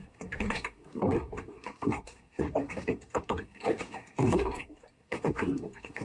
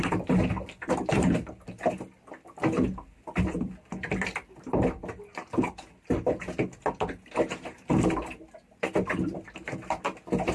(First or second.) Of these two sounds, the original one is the second